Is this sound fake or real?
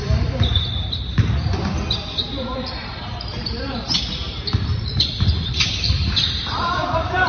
fake